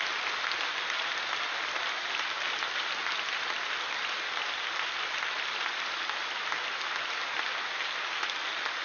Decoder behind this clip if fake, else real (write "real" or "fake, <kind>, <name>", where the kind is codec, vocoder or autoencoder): real